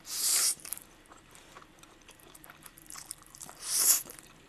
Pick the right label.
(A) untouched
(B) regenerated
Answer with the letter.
B